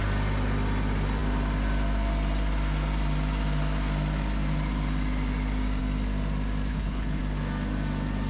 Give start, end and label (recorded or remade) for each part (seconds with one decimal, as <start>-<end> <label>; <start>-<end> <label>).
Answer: 0.0-6.7 recorded; 6.7-7.2 remade; 7.2-8.3 recorded